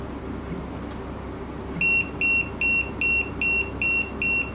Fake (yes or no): no